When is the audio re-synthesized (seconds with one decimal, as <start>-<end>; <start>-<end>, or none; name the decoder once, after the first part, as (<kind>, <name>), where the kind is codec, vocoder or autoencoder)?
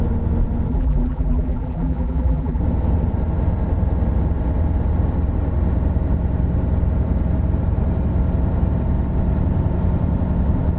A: 0.7-2.6 (vocoder, BigVGAN v2)